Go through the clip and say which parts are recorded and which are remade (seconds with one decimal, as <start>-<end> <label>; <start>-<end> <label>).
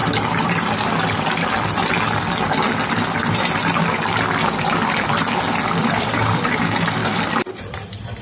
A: 0.0-0.7 remade; 0.7-5.8 recorded; 5.8-6.6 remade; 6.6-7.0 recorded; 7.0-8.2 remade